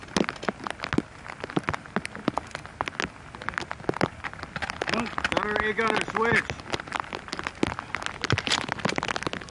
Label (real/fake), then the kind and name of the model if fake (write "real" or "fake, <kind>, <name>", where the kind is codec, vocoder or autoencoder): real